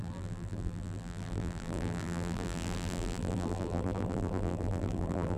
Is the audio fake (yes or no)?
yes